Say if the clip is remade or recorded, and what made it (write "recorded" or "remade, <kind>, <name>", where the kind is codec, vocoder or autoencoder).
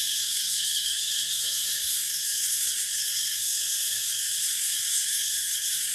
remade, codec, SNAC